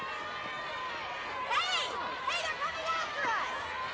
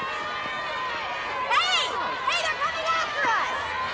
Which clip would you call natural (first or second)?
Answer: second